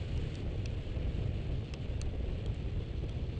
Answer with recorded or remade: recorded